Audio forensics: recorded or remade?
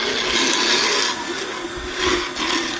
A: recorded